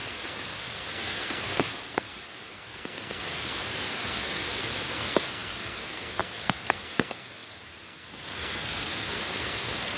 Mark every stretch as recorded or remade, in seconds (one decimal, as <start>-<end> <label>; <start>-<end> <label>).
0.0-10.0 remade